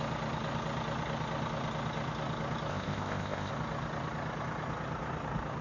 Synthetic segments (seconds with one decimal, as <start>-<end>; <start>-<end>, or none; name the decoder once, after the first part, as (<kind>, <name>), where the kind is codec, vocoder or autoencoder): 2.7-3.5 (codec, ZipCodec)